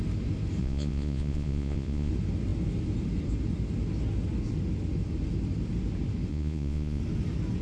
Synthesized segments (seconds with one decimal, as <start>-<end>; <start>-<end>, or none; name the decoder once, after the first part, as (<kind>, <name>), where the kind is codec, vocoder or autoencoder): 0.6-2.1 (vocoder, Vocos); 6.3-7.0